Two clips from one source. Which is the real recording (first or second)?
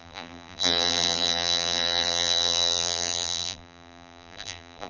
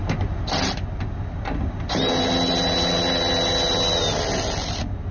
second